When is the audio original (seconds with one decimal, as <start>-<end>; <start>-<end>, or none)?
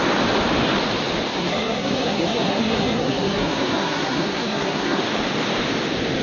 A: 0.0-1.3; 5.0-6.2